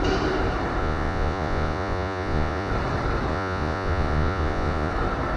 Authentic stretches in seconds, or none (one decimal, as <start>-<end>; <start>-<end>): 0.0-0.8; 2.7-3.3; 4.9-5.4